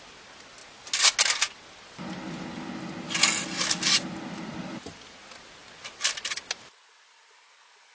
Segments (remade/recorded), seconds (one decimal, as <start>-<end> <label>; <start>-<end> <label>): 0.0-7.9 recorded